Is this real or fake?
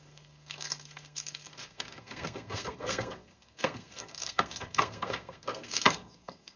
fake